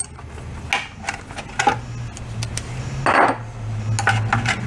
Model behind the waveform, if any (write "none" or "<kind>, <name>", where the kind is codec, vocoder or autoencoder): none